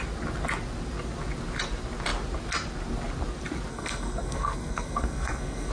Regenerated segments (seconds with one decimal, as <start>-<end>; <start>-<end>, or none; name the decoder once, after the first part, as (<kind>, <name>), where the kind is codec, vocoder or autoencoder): 3.7-5.7 (codec, SNAC)